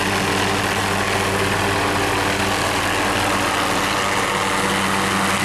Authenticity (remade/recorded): recorded